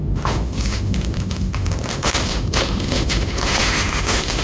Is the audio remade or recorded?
remade